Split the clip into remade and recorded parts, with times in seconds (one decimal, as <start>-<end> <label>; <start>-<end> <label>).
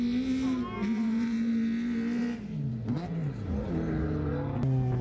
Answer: 0.0-5.0 recorded